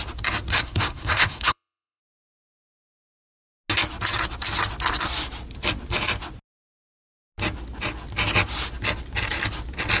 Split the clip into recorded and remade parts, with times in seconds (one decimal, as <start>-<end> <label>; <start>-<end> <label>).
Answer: 0.0-0.5 recorded; 0.5-2.0 remade; 2.0-10.0 recorded

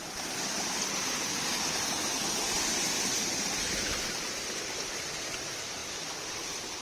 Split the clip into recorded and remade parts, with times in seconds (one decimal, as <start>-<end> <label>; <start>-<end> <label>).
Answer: 0.0-6.8 recorded

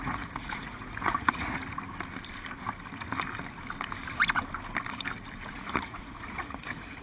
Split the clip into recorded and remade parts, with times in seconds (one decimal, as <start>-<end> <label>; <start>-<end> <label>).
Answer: 0.0-1.6 remade; 1.6-5.5 recorded; 5.5-7.0 remade

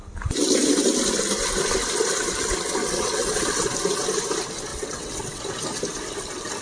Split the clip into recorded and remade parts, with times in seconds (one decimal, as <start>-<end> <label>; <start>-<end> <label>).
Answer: 0.0-2.8 recorded; 2.8-3.6 remade; 3.6-4.7 recorded; 4.7-5.4 remade; 5.4-6.6 recorded